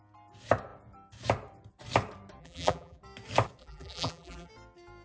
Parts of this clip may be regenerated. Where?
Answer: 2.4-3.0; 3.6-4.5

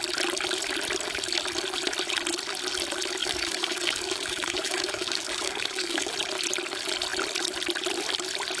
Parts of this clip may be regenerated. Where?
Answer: 3.2-6.1

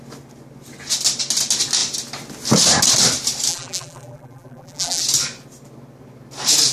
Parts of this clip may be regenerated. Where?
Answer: 3.5-5.0

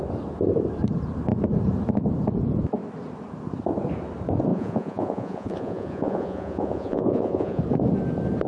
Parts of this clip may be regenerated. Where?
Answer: 4.5-7.6

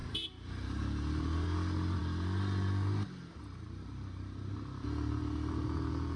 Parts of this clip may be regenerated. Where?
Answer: none